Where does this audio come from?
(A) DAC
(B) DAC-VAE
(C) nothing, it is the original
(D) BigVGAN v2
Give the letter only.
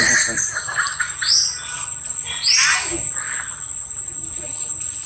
C